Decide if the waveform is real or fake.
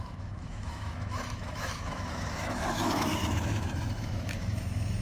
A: fake